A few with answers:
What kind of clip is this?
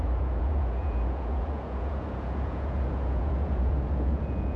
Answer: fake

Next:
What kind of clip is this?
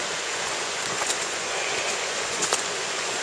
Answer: fake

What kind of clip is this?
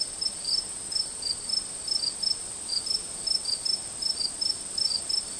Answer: real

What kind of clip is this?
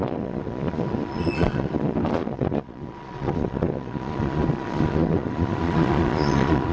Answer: fake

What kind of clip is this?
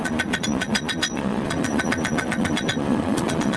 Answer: fake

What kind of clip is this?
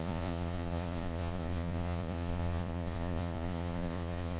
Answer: fake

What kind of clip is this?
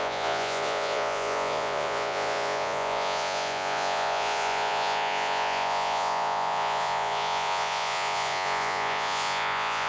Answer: fake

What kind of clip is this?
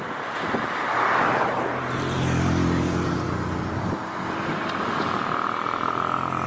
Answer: real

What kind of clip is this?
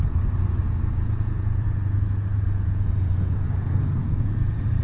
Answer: fake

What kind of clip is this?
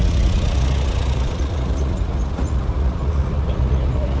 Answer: fake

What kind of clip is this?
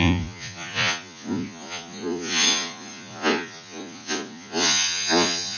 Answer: fake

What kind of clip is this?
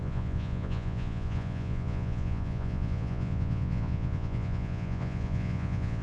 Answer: fake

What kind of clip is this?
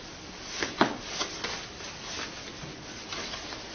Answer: real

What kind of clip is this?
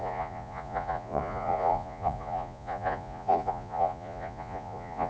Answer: fake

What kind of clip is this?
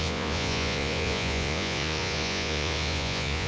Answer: fake